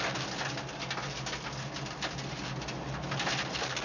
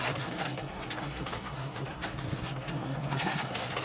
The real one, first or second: first